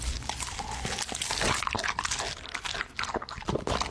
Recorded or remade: recorded